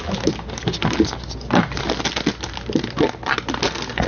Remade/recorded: recorded